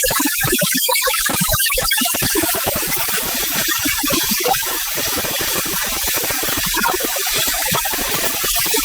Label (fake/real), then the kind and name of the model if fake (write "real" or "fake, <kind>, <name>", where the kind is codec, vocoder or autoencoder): fake, codec, DAC